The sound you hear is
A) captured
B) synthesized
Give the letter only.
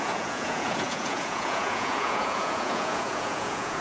B